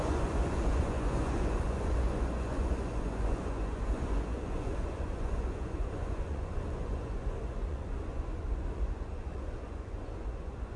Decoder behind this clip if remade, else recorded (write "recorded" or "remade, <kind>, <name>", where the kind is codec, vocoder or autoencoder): remade, vocoder, Vocos